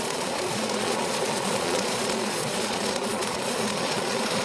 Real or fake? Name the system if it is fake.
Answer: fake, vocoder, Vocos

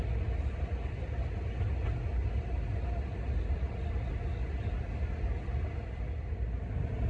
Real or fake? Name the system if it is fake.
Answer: real